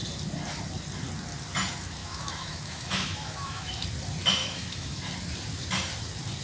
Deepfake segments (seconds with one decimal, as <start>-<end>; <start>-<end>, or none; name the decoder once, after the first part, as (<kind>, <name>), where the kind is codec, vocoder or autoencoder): 2.0-3.7 (autoencoder, DAC-VAE); 4.4-5.0